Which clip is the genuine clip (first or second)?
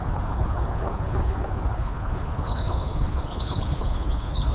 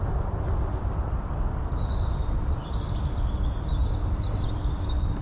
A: second